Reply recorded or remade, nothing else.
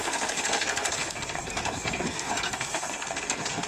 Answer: remade